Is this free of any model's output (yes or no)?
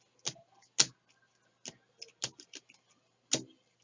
yes